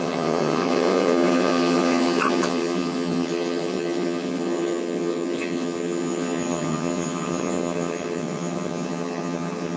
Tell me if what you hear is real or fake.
fake